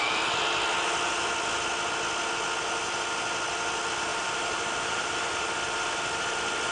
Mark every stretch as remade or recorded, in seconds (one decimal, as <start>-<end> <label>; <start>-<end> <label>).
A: 0.0-4.1 recorded; 4.1-5.5 remade; 5.5-6.7 recorded